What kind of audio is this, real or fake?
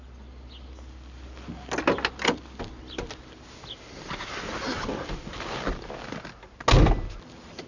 real